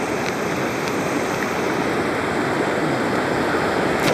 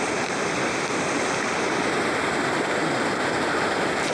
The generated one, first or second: second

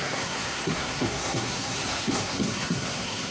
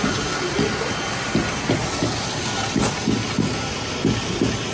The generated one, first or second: first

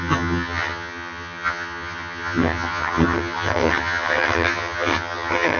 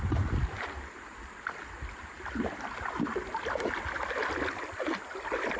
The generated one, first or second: first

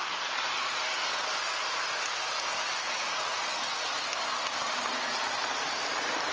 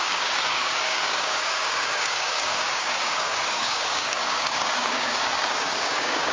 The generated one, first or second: second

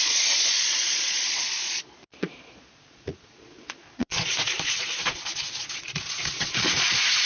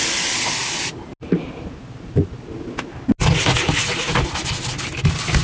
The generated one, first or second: first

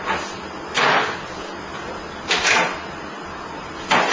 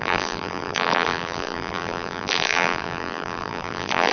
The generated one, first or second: second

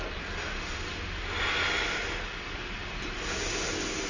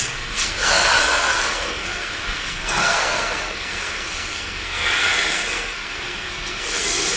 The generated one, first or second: second